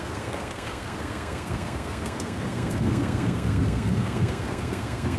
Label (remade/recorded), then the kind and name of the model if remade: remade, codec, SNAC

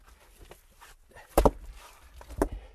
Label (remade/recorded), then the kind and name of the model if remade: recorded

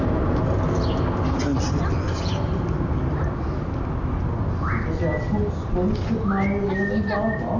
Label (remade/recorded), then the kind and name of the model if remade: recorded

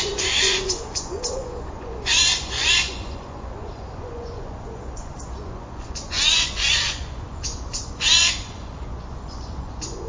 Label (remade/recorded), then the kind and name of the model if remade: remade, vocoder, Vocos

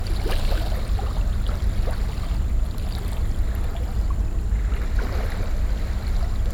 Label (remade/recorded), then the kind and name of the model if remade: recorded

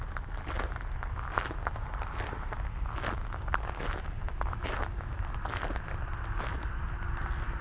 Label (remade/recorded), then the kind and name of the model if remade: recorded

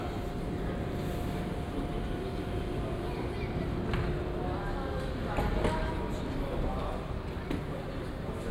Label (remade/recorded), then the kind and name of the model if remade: recorded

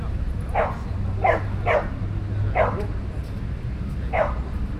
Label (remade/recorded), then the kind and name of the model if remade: recorded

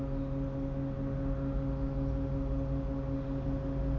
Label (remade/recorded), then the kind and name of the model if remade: recorded